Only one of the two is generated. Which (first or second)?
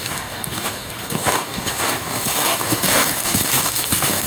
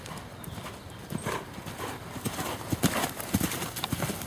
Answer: first